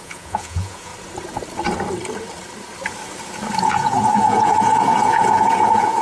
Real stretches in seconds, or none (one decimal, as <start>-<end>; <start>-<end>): 0.9-3.6